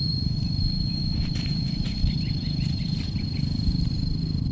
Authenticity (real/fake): fake